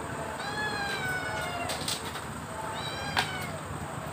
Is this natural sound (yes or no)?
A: yes